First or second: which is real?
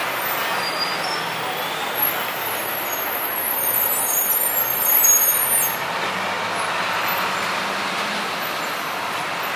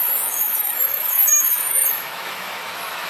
first